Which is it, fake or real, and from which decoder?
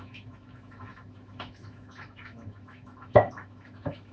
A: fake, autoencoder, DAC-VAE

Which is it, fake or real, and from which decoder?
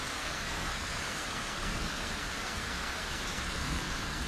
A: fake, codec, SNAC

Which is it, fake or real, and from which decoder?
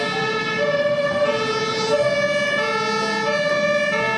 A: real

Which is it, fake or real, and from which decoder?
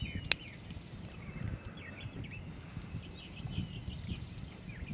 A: real